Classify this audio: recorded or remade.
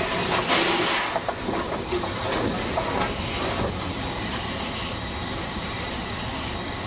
recorded